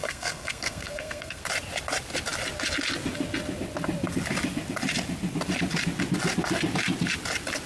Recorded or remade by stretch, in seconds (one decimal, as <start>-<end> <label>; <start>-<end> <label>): 0.0-1.4 remade; 1.4-7.7 recorded

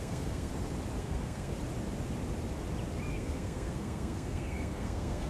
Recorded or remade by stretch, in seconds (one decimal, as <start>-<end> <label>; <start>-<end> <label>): 0.0-0.5 remade; 0.5-1.0 recorded; 1.0-1.5 remade; 1.5-3.1 recorded; 3.1-5.3 remade

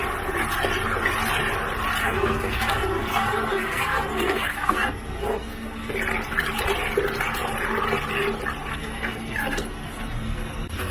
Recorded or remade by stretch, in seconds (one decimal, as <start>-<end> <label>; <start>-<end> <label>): 0.0-2.0 recorded; 2.0-5.9 remade; 5.9-8.7 recorded; 8.7-10.9 remade

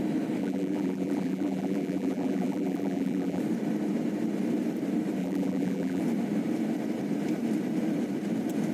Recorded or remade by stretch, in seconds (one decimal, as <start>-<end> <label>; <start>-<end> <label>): 0.0-0.4 recorded; 0.4-3.4 remade; 3.4-5.2 recorded; 5.2-6.0 remade; 6.0-8.7 recorded

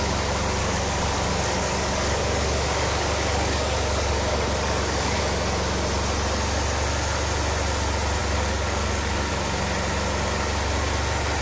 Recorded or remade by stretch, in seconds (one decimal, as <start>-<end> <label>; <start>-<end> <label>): 0.0-0.6 recorded; 0.6-5.2 remade; 5.2-8.2 recorded; 8.2-9.3 remade; 9.3-11.4 recorded